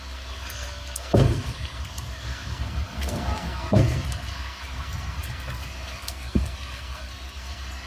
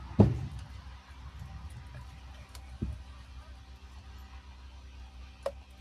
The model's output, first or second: first